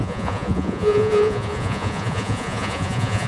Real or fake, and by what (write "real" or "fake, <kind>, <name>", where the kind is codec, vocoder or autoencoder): fake, vocoder, Vocos